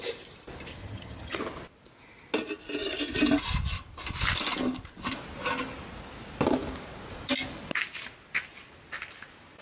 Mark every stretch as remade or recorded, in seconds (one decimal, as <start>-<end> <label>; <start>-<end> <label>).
0.0-0.7 recorded; 0.7-1.4 remade; 1.4-9.6 recorded